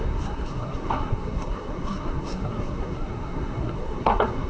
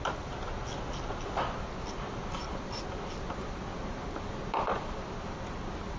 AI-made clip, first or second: first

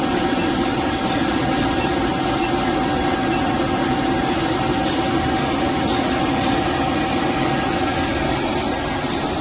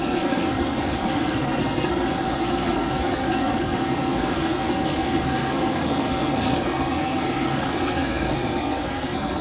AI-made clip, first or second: second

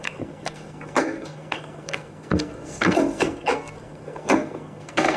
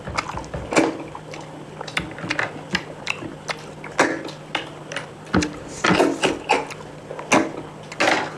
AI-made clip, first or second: first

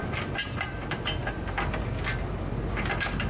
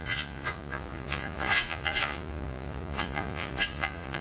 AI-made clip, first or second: second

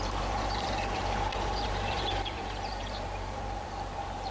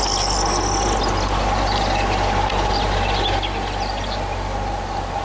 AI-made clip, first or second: first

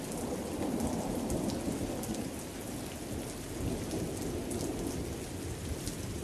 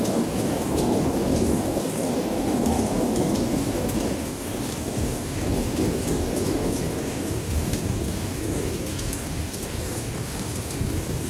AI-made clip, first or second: second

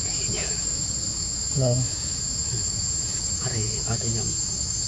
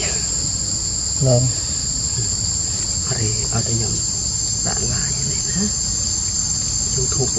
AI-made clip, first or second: first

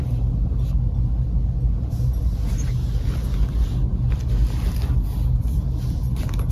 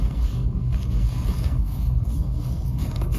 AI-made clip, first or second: second